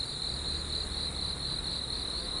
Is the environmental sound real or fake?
real